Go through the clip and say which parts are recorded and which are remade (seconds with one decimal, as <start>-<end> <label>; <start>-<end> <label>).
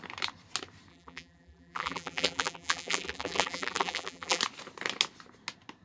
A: 0.0-0.9 recorded; 0.9-4.4 remade; 4.4-5.8 recorded